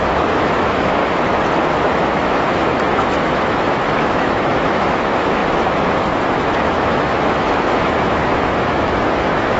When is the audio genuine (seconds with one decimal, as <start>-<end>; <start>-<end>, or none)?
1.0-1.7